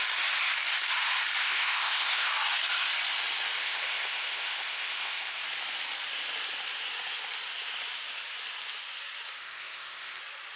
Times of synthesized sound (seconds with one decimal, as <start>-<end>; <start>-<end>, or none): 1.4-2.3; 3.6-5.4; 9.4-10.2